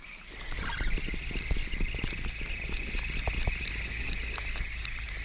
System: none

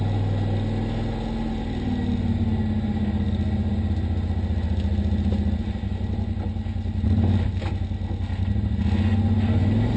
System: none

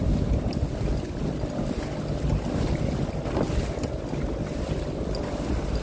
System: none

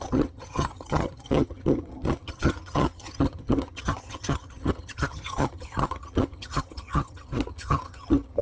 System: vocoder, HiFi-GAN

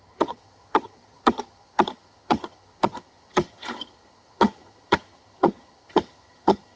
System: vocoder, HiFi-GAN